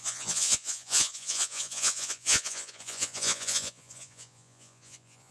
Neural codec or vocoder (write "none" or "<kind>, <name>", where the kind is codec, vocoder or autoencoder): vocoder, Vocos